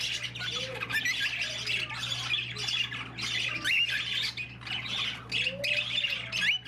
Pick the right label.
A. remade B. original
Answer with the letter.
B